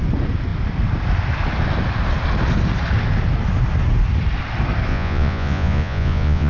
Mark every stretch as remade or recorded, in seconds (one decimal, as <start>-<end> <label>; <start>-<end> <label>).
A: 0.0-4.9 recorded; 4.9-6.5 remade